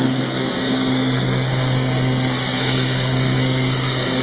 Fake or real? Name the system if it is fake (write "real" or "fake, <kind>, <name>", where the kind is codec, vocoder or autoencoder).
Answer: fake, codec, SNAC